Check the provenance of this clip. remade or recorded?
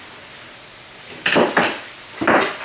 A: recorded